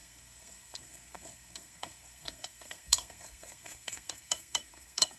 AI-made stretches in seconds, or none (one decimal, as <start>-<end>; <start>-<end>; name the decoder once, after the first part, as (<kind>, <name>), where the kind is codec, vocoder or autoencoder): 0.0-5.2 (codec, SNAC)